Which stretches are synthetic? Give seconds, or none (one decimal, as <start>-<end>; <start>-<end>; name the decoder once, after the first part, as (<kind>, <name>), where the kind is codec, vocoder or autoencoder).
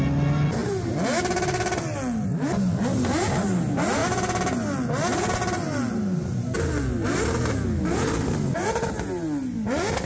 none